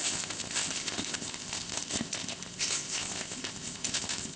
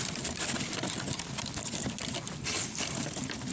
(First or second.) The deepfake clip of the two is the first